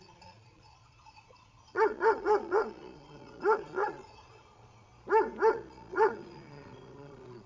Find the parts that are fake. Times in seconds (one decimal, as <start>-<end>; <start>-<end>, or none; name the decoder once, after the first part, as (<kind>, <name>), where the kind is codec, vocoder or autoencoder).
0.0-4.9 (vocoder, Vocos); 5.5-7.5